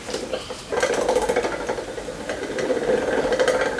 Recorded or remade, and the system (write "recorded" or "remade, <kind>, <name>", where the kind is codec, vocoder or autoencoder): recorded